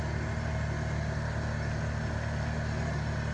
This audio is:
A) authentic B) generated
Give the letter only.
A